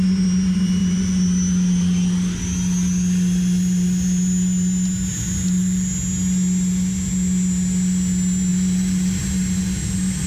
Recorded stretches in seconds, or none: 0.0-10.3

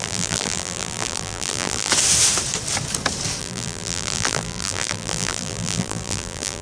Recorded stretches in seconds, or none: 1.9-3.4